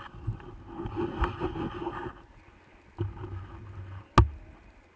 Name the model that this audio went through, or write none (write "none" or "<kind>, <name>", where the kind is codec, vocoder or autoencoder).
none